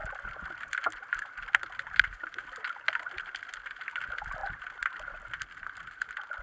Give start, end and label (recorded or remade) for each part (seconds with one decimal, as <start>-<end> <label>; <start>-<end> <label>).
0.0-6.4 recorded